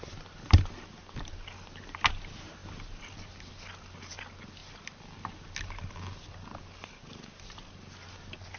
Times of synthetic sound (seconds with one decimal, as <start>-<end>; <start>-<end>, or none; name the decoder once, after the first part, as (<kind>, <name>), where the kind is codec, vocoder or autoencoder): none